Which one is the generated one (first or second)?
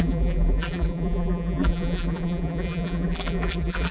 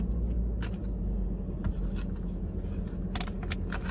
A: first